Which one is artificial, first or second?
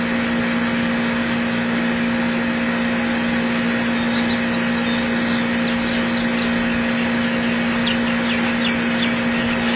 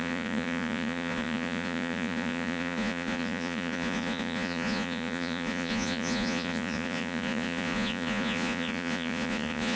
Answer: second